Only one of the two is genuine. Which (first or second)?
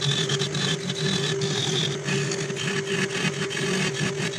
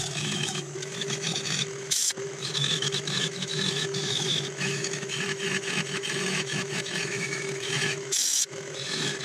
first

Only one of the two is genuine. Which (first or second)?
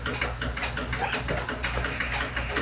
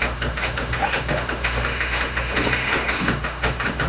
first